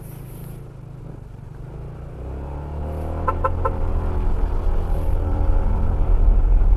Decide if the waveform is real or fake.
real